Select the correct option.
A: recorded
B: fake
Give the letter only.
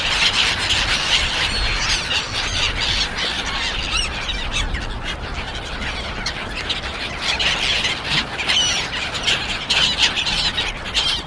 A